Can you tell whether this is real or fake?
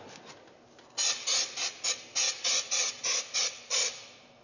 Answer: real